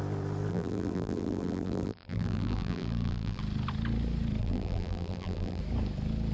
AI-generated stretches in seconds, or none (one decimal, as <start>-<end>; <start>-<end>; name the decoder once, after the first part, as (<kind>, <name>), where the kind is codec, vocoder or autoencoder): 0.5-3.4 (vocoder, BigVGAN v2); 4.4-5.6